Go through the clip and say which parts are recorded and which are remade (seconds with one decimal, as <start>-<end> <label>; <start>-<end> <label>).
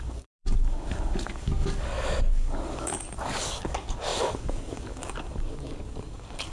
0.0-6.5 remade